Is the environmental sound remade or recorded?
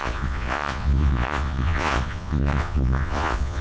remade